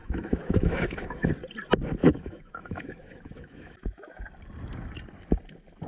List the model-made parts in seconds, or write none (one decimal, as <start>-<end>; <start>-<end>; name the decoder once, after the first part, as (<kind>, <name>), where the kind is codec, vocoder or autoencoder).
0.0-1.3 (autoencoder, DAC-VAE); 2.0-4.2